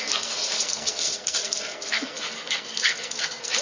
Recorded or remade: remade